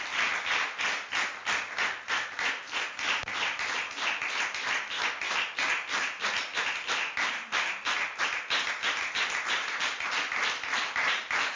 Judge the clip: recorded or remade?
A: recorded